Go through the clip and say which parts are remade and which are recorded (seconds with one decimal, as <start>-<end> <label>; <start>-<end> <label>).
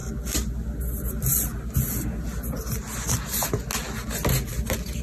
0.0-0.9 recorded; 0.9-1.5 remade; 1.5-4.5 recorded; 4.5-5.0 remade